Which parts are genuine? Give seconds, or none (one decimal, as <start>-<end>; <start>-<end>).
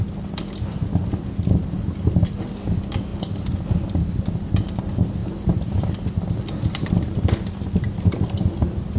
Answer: 0.0-5.2; 6.9-9.0